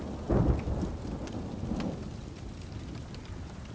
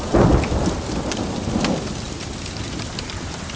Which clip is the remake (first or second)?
second